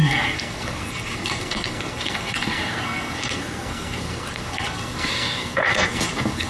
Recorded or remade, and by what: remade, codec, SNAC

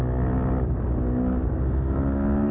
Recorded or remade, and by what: recorded